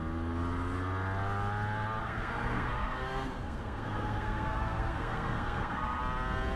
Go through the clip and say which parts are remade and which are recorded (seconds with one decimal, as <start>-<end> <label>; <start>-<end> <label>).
0.0-2.0 recorded; 2.0-6.0 remade; 6.0-6.6 recorded